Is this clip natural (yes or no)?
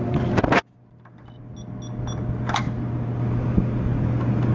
yes